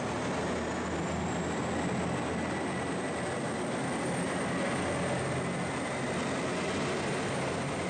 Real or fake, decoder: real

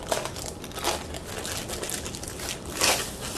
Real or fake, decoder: real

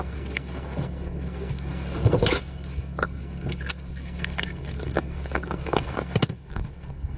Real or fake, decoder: fake, codec, SNAC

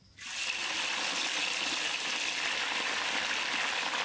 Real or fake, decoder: real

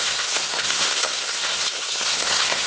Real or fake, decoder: fake, codec, SNAC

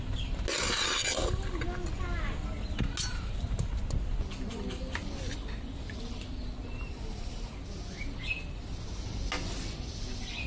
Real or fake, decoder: real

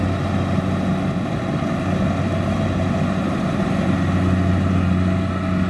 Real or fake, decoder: real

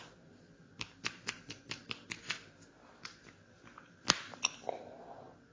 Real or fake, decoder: real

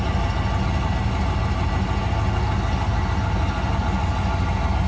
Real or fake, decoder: real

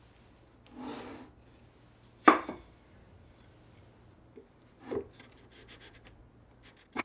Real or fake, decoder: real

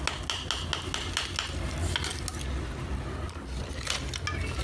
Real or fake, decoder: real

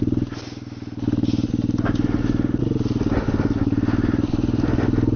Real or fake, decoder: real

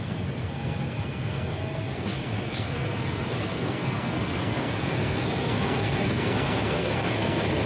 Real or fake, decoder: fake, codec, SNAC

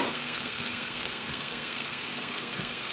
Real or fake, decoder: fake, codec, SNAC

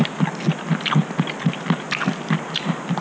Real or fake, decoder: real